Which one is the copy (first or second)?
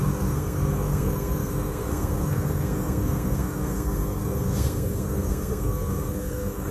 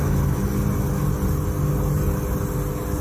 first